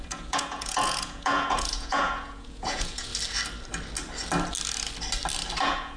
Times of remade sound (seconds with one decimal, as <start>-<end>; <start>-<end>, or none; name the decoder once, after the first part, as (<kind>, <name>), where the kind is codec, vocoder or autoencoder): 0.0-3.1 (vocoder, Vocos); 5.6-6.0